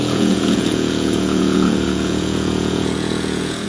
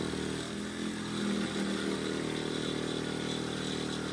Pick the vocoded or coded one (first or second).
first